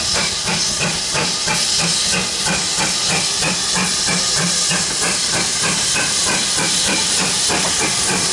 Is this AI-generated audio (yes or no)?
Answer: yes